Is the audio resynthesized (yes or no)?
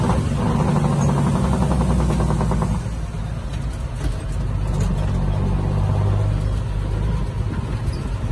no